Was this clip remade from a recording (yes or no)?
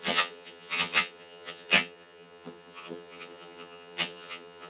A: yes